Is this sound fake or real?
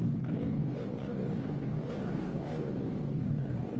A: fake